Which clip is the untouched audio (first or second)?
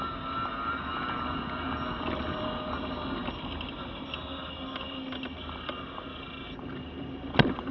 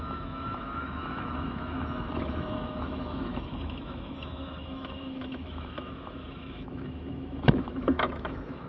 first